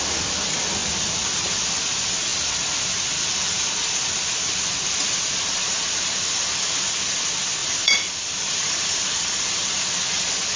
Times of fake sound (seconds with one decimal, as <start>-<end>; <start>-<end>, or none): 7.6-9.8